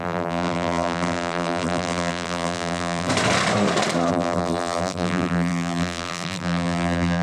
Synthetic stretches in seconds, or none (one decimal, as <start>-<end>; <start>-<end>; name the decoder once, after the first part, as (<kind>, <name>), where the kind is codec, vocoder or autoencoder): 0.0-3.1 (vocoder, BigVGAN v2); 4.1-7.2